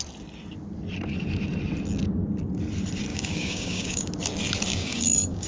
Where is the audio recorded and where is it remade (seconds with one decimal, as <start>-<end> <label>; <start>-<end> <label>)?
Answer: 0.0-3.1 recorded; 3.1-4.1 remade; 4.1-4.7 recorded; 4.7-5.5 remade